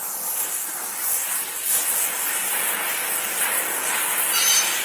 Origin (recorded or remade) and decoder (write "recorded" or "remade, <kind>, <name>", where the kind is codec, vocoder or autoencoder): recorded